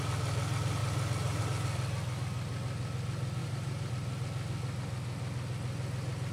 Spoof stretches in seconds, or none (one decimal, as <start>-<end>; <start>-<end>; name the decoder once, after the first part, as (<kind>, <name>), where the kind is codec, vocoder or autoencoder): 0.8-1.4 (vocoder, BigVGAN v2); 3.4-3.9